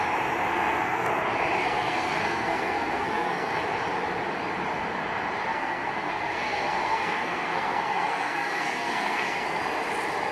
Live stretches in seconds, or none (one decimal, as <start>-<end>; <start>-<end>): 0.0-0.5; 1.1-1.6; 3.6-5.5; 9.6-10.3